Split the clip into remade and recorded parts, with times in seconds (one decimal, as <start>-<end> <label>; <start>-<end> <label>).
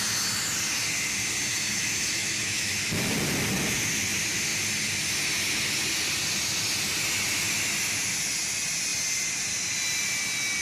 0.0-1.5 recorded; 1.5-2.7 remade; 2.7-10.6 recorded